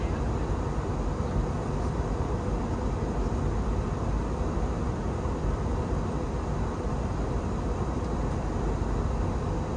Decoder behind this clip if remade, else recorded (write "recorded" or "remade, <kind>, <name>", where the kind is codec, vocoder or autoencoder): recorded